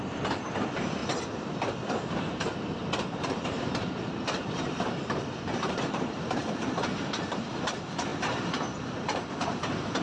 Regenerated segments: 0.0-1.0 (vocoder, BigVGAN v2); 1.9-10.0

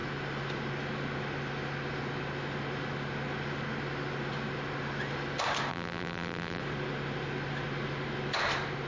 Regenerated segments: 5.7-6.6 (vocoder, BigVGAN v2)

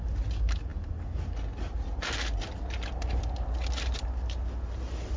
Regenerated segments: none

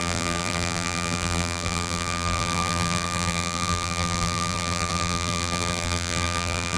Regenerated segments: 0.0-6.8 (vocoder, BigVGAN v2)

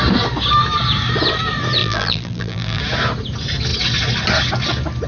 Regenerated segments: 1.8-2.8 (vocoder, BigVGAN v2)

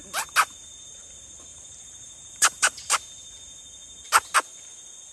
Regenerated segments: 1.5-2.9 (vocoder, BigVGAN v2)

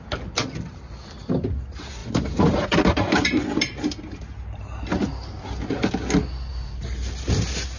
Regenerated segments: 2.0-3.4 (vocoder, BigVGAN v2); 6.5-7.3